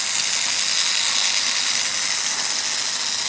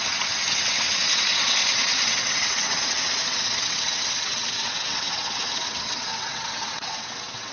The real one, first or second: first